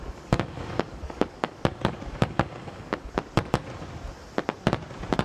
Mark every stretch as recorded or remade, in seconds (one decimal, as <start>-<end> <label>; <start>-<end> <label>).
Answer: 0.0-3.1 remade; 3.1-5.2 recorded